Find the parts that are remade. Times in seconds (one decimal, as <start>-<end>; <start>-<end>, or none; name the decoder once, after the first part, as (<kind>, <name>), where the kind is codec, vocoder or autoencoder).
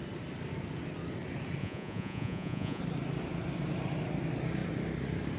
1.6-2.8 (vocoder, Vocos)